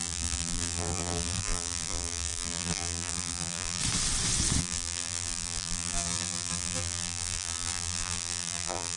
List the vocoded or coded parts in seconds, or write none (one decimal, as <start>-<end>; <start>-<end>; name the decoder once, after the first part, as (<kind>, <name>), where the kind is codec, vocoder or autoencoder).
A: 0.0-3.8 (vocoder, BigVGAN v2); 4.6-9.0